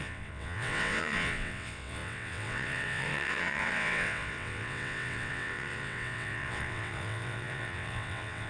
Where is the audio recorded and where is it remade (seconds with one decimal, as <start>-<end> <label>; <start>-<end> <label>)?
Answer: 0.0-8.5 remade